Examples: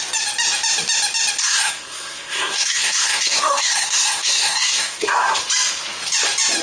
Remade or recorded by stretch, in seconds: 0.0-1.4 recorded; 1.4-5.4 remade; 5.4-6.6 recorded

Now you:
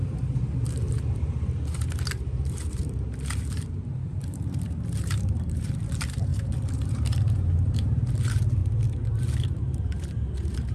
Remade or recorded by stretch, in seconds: 0.0-8.6 remade; 8.6-9.2 recorded; 9.2-10.7 remade